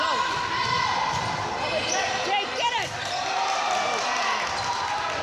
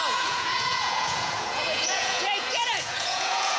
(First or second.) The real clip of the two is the first